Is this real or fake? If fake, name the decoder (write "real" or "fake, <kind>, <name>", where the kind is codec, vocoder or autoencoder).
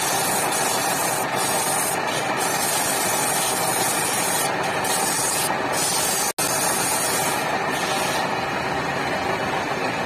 real